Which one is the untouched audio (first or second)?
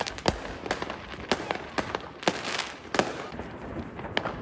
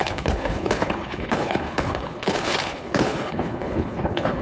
first